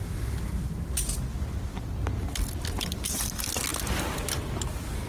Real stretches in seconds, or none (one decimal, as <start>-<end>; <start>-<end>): 0.0-5.1